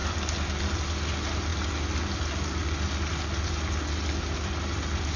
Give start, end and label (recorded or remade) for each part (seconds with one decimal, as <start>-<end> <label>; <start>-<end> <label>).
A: 0.0-5.2 recorded